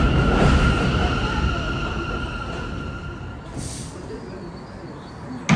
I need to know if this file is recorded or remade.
recorded